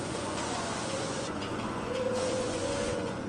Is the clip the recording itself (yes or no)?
no